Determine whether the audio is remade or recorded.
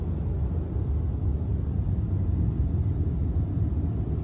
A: recorded